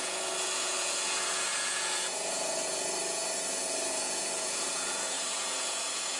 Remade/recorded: remade